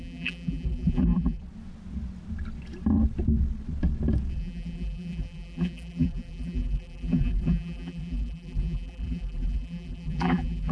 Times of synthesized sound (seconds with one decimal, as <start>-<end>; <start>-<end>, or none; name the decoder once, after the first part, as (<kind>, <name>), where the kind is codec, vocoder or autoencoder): 0.0-1.4 (vocoder, BigVGAN v2); 4.3-10.7